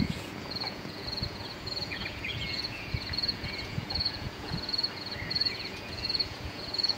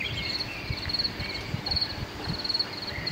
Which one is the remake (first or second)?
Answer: first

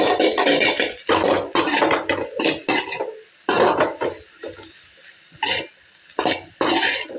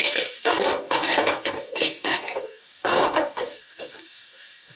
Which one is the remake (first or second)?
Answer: second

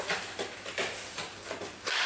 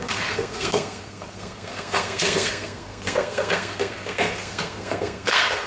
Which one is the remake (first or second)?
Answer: second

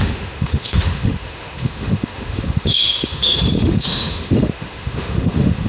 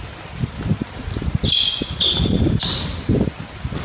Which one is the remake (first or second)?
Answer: first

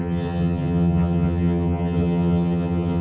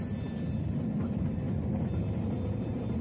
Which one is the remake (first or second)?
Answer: first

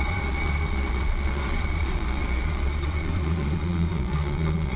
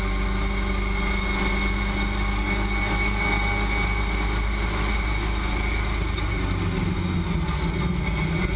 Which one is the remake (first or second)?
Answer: first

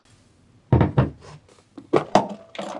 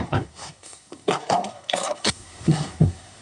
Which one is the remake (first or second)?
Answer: second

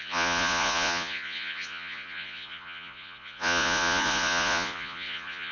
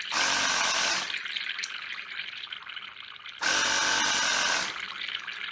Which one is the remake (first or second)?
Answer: first